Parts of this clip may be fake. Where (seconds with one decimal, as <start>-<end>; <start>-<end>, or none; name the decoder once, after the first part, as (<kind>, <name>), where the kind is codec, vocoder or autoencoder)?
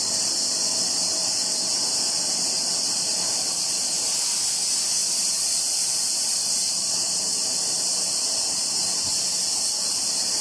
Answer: 1.7-3.4 (vocoder, BigVGAN v2); 5.0-10.4